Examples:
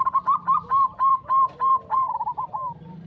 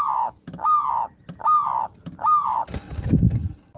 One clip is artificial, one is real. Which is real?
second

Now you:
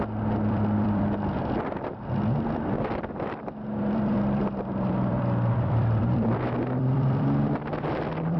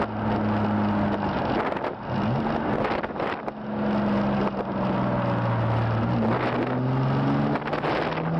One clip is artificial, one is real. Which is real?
second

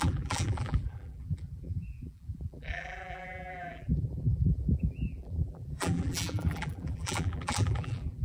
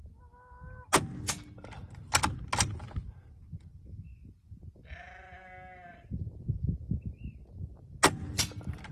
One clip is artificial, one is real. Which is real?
second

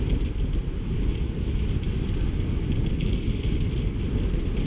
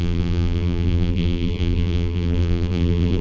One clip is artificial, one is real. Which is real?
first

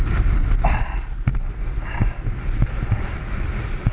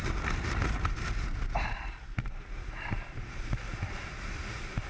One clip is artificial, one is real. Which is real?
first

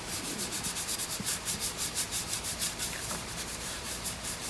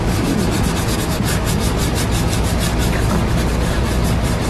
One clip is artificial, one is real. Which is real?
second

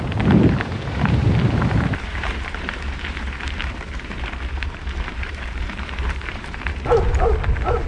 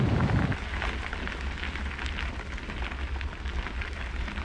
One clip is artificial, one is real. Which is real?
second